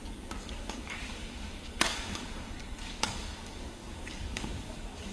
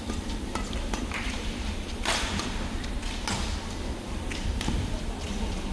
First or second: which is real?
second